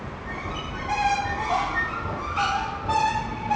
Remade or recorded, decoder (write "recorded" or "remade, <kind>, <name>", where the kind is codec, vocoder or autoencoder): recorded